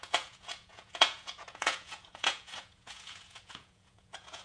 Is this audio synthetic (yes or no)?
yes